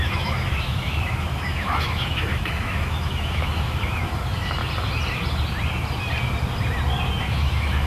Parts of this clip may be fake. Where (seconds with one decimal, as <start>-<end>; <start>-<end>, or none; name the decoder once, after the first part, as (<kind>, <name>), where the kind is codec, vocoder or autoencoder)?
0.0-4.6 (autoencoder, DAC-VAE); 7.2-7.9